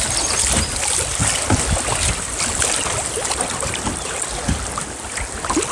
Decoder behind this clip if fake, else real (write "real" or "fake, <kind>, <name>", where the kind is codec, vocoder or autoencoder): real